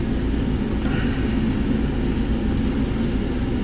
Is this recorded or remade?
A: recorded